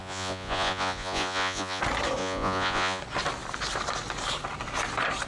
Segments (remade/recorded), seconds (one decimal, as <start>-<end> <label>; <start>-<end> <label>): 0.0-1.8 remade; 1.8-2.2 recorded; 2.2-3.0 remade; 3.0-5.3 recorded